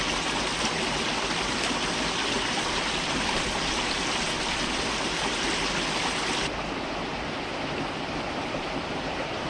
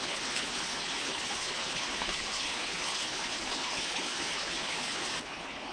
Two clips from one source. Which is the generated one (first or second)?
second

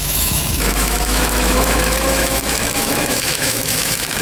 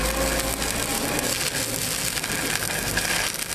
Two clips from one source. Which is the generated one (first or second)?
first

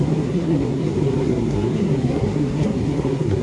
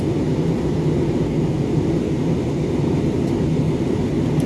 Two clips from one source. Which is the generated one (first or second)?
first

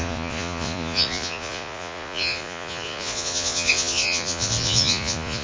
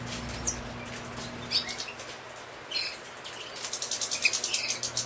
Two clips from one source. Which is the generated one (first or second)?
first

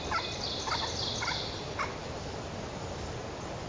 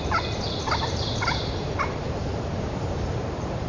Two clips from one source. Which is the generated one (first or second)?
second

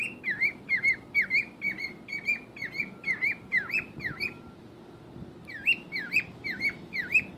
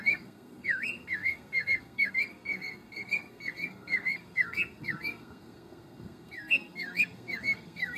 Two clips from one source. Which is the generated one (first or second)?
second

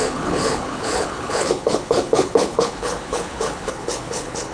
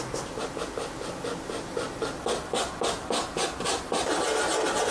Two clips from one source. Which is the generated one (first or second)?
first